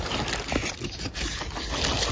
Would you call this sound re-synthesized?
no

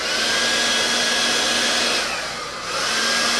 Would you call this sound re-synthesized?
no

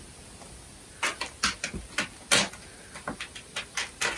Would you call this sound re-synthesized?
no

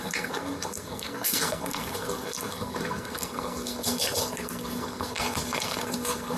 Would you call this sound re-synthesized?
yes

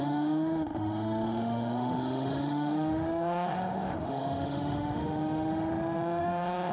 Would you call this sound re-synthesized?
yes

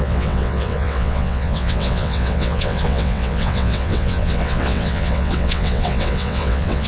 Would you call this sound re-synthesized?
yes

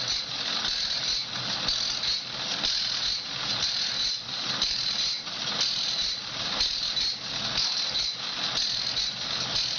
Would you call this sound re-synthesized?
no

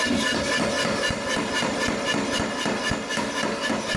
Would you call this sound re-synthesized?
no